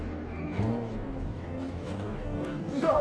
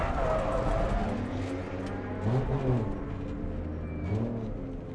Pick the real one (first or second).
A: second